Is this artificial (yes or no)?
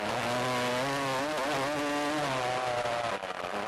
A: no